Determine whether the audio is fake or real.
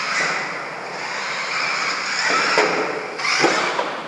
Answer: real